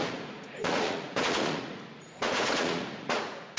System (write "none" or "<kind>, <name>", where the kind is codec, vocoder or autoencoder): vocoder, Vocos